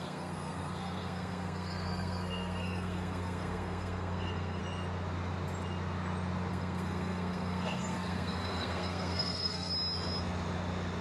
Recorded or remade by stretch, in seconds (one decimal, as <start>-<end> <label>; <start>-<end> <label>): 0.0-4.6 remade; 4.6-6.5 recorded; 6.5-9.7 remade; 9.7-11.0 recorded